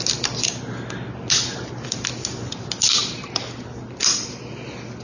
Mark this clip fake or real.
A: real